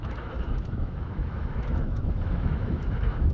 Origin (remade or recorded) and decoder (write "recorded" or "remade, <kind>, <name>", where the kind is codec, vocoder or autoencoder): remade, autoencoder, DAC-VAE